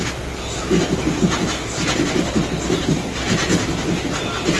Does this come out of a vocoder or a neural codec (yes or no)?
no